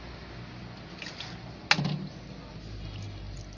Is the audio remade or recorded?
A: recorded